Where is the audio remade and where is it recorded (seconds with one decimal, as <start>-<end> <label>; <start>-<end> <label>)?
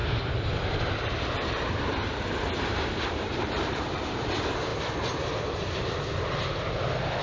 0.0-4.3 remade; 4.3-7.2 recorded